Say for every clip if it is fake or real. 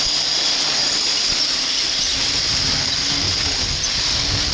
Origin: real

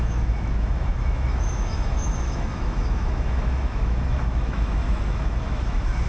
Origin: fake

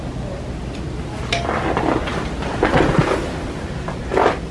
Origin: real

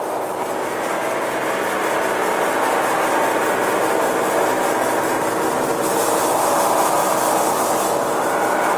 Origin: real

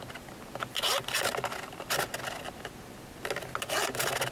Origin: real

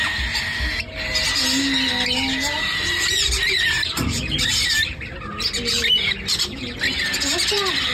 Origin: real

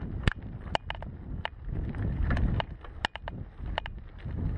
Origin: real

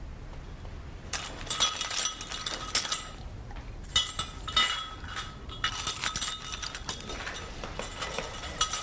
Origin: real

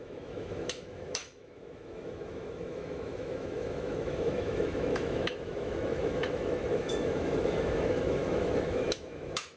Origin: fake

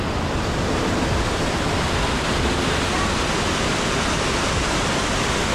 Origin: real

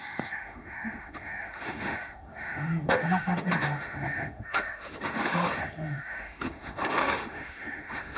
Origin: fake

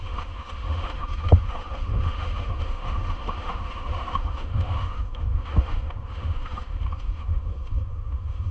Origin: fake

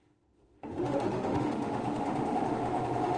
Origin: fake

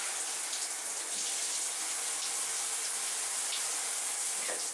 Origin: real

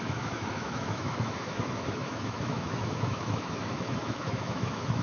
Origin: fake